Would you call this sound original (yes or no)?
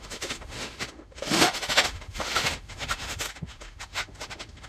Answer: no